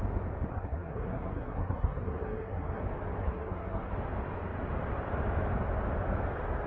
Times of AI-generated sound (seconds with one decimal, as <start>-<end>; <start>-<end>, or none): 0.5-2.8; 3.2-3.9